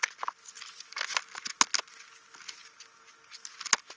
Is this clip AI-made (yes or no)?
no